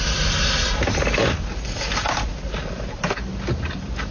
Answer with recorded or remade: recorded